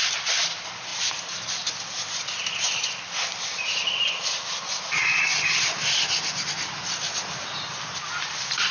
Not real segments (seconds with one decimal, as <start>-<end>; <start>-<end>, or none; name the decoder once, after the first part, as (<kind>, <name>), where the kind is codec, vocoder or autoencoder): none